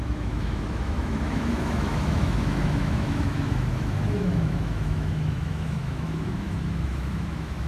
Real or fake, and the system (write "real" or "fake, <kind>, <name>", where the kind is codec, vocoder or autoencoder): fake, autoencoder, DAC-VAE